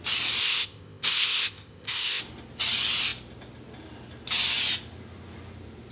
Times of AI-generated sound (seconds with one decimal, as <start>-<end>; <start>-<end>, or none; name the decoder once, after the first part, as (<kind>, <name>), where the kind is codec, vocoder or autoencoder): 0.4-2.2 (codec, ZipCodec)